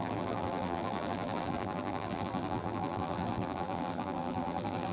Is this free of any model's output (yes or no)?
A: no